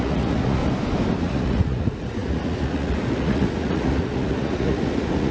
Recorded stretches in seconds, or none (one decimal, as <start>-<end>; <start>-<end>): 0.6-1.2